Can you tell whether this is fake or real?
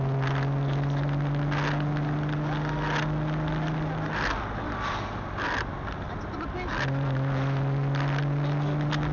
real